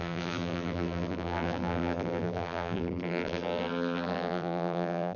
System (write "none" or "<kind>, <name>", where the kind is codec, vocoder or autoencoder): vocoder, BigVGAN v2